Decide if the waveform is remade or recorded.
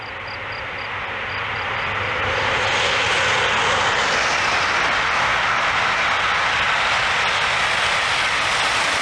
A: recorded